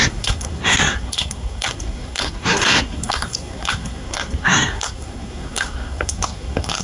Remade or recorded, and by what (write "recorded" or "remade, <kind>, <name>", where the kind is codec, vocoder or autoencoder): remade, codec, SNAC